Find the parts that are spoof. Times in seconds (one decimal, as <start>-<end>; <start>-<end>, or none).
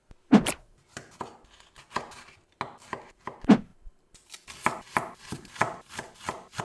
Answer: 3.7-6.6